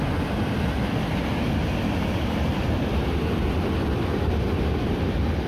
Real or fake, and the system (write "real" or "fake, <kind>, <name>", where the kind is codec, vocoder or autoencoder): real